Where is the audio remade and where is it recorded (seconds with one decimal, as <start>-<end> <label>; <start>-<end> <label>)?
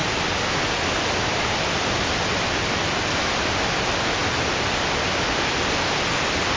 0.0-6.6 recorded